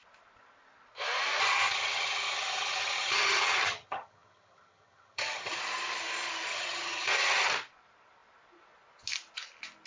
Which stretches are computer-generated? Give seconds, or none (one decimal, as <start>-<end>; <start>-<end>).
1.7-5.6; 6.5-7.5